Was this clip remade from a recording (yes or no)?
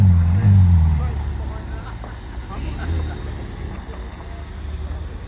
no